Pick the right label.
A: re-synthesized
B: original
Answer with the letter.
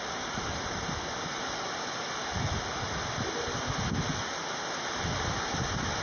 B